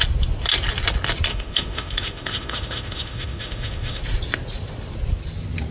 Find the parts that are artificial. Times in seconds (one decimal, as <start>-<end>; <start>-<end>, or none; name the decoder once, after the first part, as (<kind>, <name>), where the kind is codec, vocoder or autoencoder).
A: 1.3-4.0 (autoencoder, DAC-VAE)